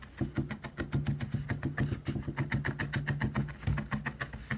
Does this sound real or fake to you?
real